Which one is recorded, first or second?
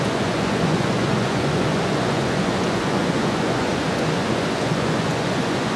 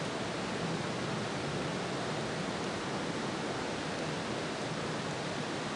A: second